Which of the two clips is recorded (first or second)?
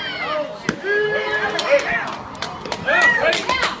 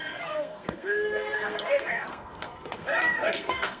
first